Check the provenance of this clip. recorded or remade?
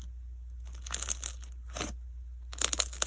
recorded